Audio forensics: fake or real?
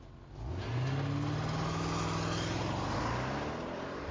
real